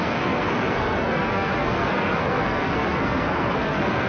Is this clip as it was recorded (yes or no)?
no